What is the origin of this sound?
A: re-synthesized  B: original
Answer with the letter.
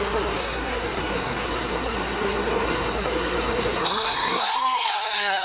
A